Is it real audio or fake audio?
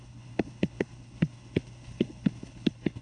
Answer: fake